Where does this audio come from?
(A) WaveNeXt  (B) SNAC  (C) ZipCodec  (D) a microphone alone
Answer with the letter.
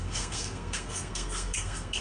B